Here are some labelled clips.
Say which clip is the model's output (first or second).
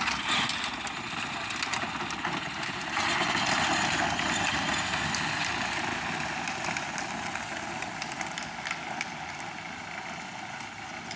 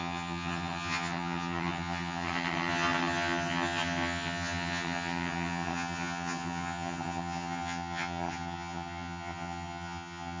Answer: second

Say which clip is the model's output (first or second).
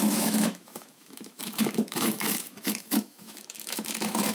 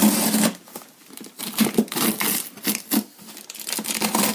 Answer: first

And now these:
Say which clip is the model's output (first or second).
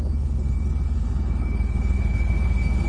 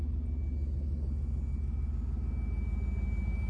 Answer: first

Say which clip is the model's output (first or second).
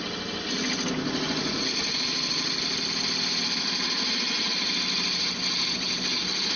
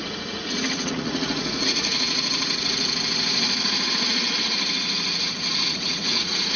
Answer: second